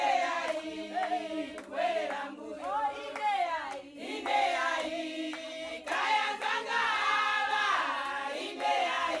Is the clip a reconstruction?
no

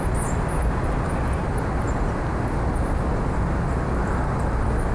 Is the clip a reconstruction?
no